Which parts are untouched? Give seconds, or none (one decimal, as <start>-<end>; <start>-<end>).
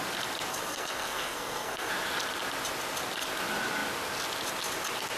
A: 0.0-0.5; 1.9-5.2